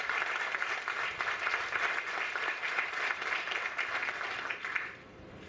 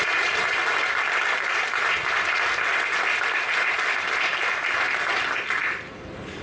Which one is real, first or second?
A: second